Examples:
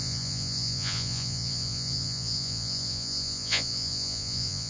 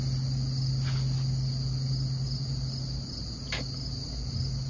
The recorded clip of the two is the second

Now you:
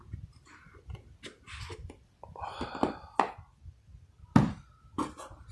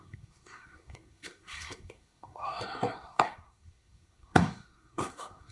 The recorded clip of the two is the first